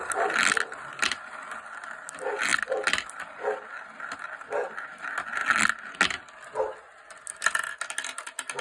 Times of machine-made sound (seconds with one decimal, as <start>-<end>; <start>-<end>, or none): none